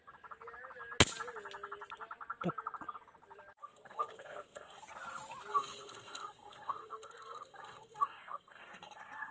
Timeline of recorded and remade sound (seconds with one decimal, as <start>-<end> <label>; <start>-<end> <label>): 0.0-3.6 recorded; 3.6-4.8 remade; 4.8-5.5 recorded; 5.5-9.3 remade